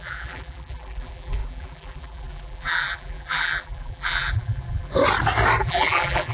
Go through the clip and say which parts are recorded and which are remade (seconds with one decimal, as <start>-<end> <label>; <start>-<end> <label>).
0.0-4.9 remade; 4.9-5.6 recorded; 5.6-6.3 remade